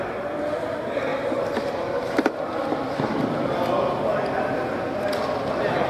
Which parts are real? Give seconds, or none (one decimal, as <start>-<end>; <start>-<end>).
0.0-5.9